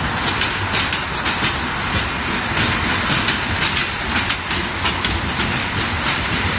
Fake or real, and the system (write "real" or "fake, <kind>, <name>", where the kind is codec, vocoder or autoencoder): real